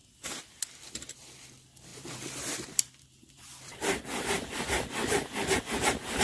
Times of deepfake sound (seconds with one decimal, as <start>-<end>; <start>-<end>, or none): 1.9-5.6